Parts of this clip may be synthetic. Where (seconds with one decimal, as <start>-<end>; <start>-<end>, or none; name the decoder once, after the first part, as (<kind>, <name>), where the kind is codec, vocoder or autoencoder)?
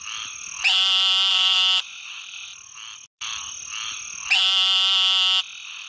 1.3-2.2 (vocoder, Vocos)